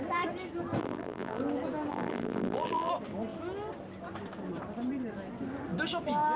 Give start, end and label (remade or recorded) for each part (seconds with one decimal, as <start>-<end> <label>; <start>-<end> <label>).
0.0-0.8 recorded; 0.8-1.4 remade; 1.4-1.9 recorded; 1.9-2.9 remade; 2.9-6.4 recorded